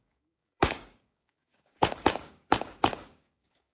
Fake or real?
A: fake